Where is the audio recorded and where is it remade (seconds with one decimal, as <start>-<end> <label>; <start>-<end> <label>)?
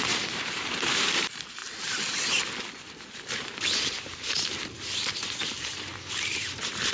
0.0-1.6 remade; 1.6-3.6 recorded; 3.6-5.9 remade; 5.9-6.9 recorded